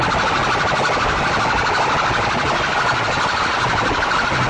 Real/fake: real